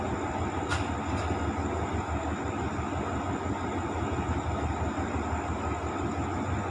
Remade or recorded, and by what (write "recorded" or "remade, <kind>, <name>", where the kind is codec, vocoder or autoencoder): recorded